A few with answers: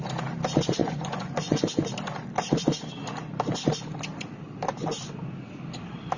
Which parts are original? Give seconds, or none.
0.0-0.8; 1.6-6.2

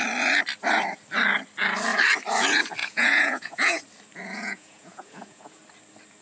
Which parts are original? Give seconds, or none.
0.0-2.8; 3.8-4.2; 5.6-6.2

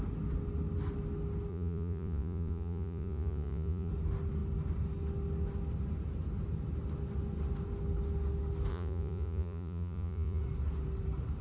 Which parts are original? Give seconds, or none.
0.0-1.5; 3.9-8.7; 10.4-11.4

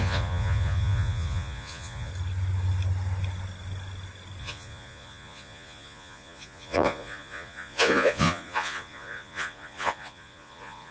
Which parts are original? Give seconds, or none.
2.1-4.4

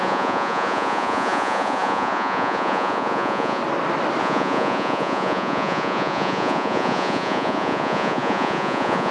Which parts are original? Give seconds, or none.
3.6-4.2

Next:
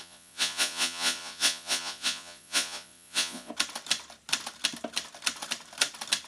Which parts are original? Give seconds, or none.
3.5-6.3

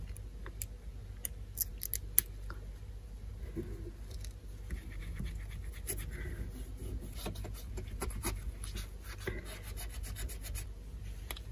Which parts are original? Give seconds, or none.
0.0-11.5

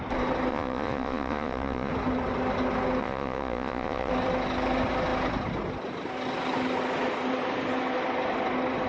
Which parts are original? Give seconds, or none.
0.0-0.5; 1.9-3.0; 4.1-8.9